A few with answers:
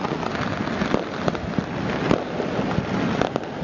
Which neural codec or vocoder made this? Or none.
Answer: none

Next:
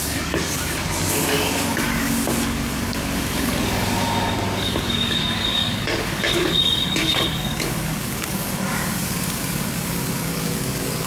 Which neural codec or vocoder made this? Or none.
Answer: codec, DAC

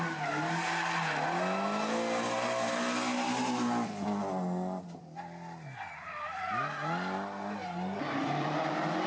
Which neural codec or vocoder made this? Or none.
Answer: none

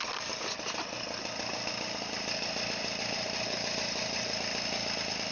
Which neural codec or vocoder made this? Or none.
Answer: none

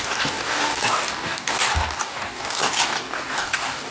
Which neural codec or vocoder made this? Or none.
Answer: codec, DAC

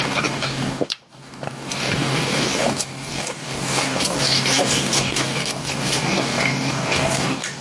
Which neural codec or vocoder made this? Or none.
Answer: codec, DAC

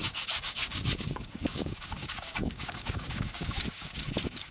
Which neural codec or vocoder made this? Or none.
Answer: codec, DAC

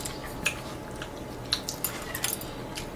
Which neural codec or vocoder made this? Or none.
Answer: none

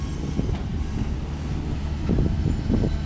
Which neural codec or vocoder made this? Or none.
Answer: none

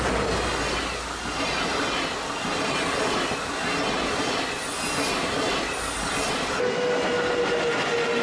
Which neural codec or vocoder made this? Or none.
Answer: none